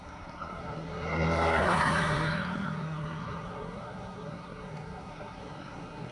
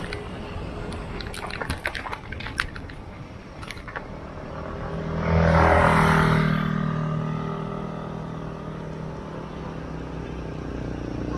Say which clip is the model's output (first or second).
first